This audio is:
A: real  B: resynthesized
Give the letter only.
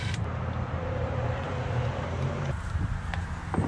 B